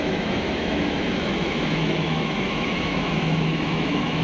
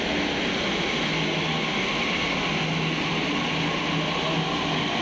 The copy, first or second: first